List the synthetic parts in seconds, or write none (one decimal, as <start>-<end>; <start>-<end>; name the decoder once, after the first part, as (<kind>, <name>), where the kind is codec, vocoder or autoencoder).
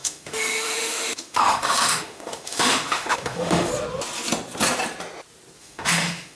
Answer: 0.0-3.7 (autoencoder, DAC-VAE); 5.6-6.4